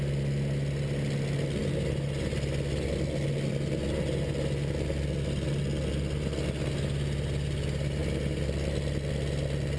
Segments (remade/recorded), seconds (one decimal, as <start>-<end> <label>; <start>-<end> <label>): 0.0-9.8 recorded